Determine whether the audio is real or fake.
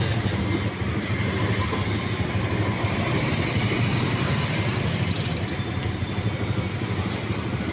real